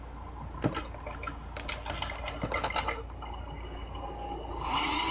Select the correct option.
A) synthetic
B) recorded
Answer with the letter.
B